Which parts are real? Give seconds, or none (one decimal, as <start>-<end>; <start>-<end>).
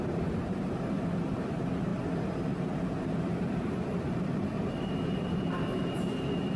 1.9-2.4